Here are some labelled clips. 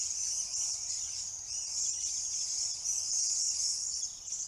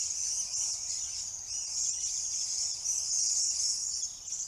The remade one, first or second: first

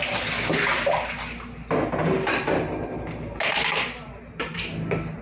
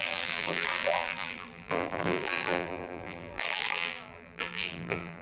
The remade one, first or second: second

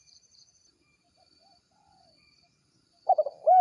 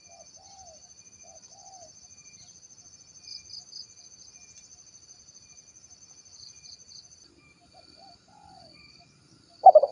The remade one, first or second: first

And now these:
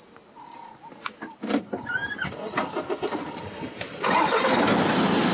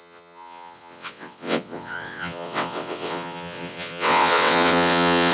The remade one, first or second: second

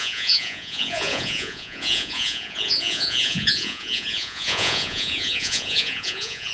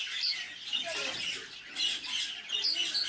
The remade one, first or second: first